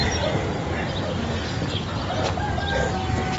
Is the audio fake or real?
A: real